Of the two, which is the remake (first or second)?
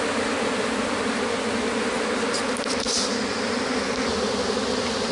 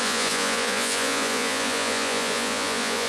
second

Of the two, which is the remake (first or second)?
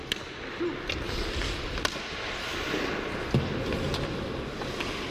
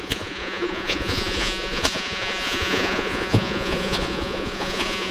second